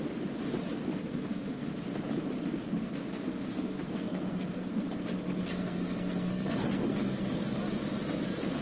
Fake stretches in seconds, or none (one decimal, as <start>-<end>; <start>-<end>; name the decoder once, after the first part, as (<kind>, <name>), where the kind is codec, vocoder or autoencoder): 0.9-1.7 (codec, SNAC); 2.5-7.4